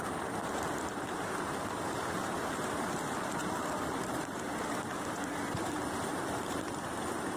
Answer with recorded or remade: remade